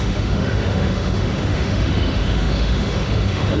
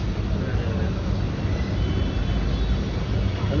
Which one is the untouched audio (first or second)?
second